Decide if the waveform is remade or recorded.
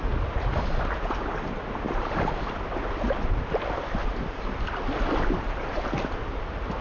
recorded